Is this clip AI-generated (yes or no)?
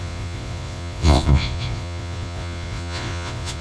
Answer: yes